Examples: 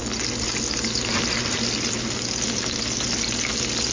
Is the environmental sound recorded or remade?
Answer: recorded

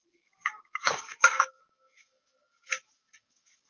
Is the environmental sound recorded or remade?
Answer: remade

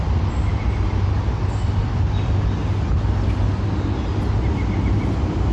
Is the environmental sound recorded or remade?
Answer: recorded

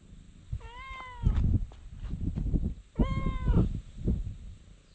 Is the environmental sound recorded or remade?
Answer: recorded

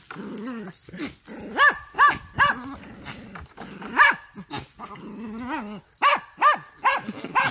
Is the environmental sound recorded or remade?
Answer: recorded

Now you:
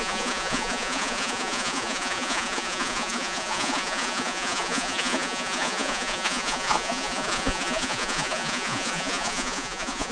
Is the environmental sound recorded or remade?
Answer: remade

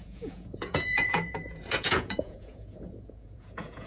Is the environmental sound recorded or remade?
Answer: remade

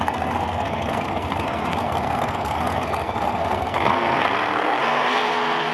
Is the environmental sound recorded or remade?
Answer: remade